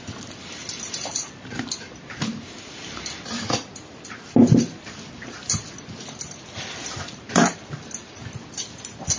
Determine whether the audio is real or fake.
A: real